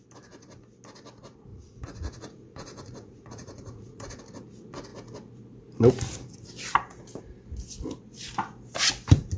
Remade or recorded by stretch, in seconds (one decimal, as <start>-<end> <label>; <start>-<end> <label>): 0.0-1.5 recorded; 1.5-4.2 remade; 4.2-9.4 recorded